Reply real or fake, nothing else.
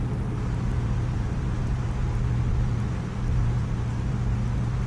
real